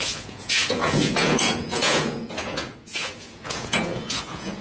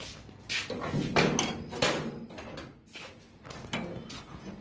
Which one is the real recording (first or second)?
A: second